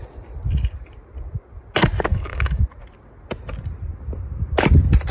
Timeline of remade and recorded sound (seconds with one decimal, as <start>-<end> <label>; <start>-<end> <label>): 0.0-2.1 recorded; 2.1-2.6 remade; 2.6-5.1 recorded